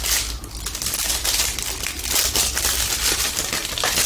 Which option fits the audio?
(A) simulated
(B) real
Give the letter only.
B